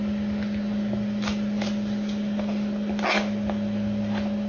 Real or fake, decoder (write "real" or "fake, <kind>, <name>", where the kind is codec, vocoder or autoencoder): real